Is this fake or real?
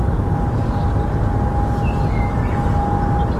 real